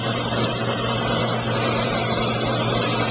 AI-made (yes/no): no